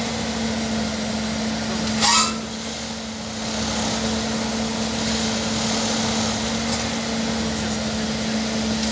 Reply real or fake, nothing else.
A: real